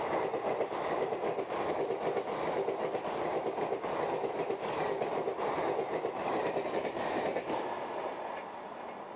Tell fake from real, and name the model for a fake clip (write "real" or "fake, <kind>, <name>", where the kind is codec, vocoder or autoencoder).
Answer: real